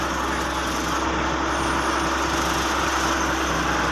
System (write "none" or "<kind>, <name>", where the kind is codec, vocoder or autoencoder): none